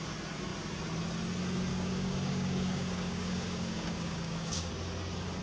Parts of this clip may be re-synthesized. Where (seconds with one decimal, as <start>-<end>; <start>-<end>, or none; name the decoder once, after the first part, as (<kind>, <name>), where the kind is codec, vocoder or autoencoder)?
1.7-4.7 (codec, DAC)